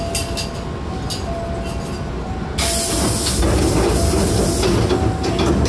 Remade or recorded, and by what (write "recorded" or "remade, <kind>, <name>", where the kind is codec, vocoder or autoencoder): recorded